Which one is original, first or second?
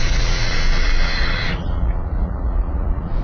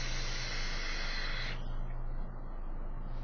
second